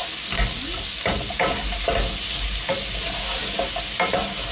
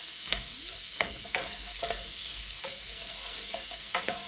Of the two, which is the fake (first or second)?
second